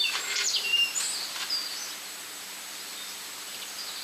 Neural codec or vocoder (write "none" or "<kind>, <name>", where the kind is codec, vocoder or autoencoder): vocoder, BigVGAN v2